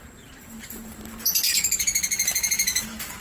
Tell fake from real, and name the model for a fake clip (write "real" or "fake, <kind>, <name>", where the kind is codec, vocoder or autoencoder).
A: fake, vocoder, BigVGAN v2